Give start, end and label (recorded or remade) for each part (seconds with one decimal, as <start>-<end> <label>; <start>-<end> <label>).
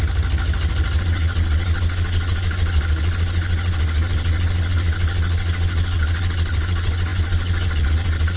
0.0-1.0 recorded; 1.0-8.4 remade